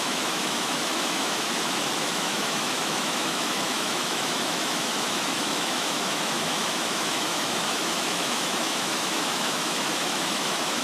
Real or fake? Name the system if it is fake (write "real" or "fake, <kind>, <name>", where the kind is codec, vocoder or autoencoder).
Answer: fake, autoencoder, DAC-VAE